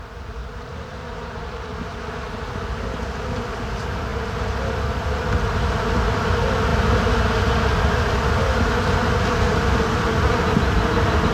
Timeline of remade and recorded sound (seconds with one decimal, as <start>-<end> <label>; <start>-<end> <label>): 0.0-0.4 recorded; 0.4-1.7 remade; 1.7-11.3 recorded